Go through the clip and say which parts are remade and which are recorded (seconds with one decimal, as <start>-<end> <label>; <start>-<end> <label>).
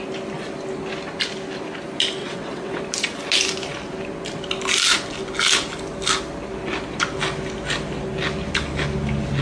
0.0-2.2 recorded; 2.2-2.8 remade; 2.8-9.4 recorded